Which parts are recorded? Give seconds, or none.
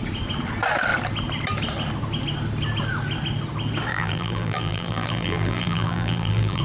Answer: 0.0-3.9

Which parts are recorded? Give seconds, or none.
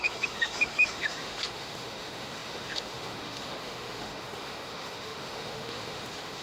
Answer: none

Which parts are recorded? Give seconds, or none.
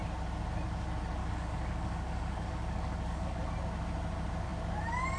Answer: 0.0-1.2; 3.4-5.2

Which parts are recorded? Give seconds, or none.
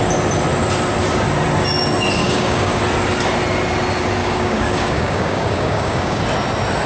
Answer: 0.0-2.2; 2.8-4.2; 6.2-6.9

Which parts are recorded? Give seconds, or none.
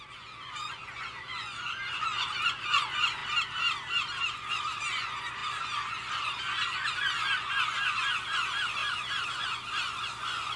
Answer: 3.2-4.2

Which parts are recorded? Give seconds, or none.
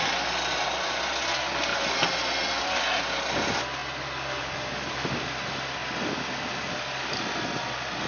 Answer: 0.0-8.1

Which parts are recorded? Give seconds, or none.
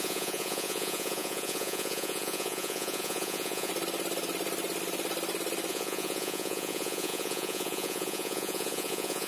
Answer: 3.7-5.7